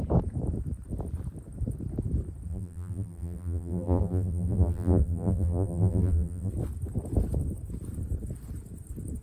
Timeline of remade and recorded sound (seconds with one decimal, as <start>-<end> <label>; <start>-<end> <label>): 0.0-2.5 recorded; 2.5-6.5 remade; 6.5-9.2 recorded